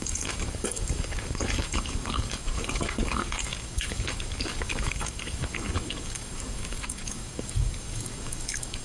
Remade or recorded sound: remade